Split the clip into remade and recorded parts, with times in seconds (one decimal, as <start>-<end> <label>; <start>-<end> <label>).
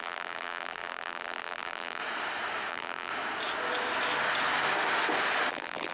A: 0.0-2.0 remade; 2.0-2.7 recorded; 2.7-3.1 remade; 3.1-5.5 recorded; 5.5-5.9 remade